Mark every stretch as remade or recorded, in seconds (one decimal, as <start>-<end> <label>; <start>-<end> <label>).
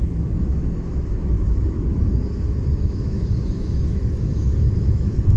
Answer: 0.0-5.4 remade